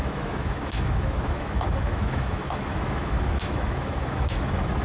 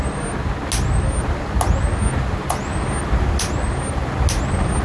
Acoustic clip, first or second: second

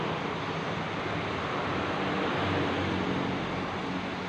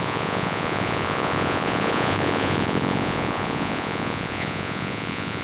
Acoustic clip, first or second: first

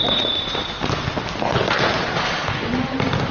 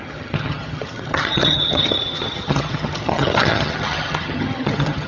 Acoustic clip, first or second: first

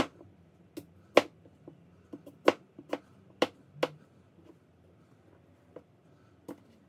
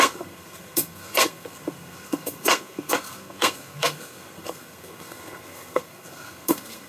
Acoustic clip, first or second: first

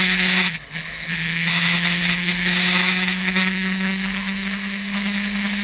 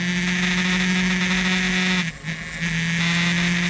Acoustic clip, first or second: second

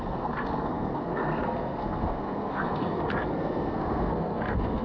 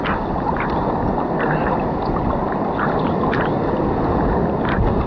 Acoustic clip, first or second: second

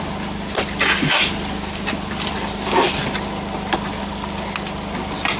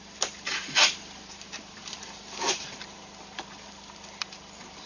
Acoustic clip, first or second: first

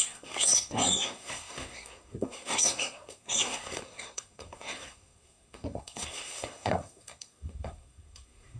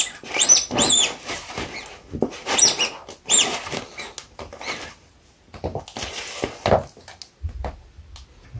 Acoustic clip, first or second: second